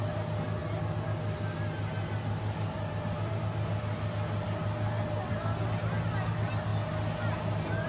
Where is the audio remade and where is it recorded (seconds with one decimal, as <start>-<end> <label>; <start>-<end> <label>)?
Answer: 0.0-7.9 recorded

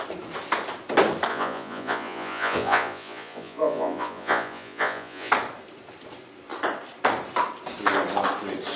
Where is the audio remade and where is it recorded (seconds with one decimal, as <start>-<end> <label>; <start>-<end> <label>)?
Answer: 0.0-1.3 recorded; 1.3-5.3 remade; 5.3-8.8 recorded

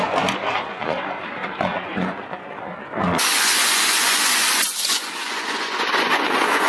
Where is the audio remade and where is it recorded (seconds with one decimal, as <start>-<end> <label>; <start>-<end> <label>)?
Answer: 0.0-6.7 remade